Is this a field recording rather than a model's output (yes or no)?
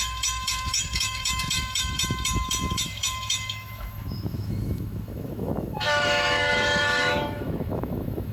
no